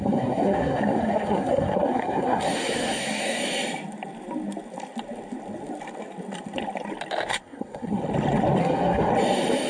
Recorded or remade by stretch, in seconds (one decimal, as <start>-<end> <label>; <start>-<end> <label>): 0.0-3.4 remade; 3.4-7.3 recorded; 7.3-8.0 remade; 8.0-8.6 recorded; 8.6-9.1 remade; 9.1-9.7 recorded